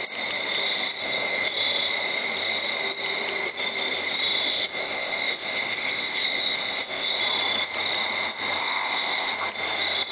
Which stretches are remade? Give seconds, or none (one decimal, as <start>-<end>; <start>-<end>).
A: 1.0-1.5; 4.5-7.2; 8.6-9.3